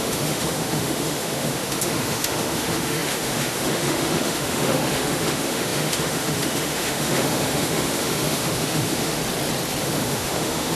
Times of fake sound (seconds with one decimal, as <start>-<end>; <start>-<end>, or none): 0.0-9.2; 9.8-10.7